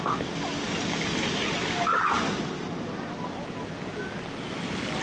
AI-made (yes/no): no